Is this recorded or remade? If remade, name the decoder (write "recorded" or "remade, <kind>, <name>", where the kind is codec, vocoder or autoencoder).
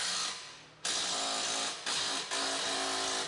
recorded